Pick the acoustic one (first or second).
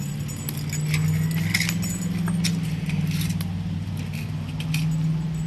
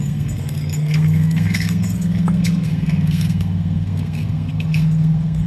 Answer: first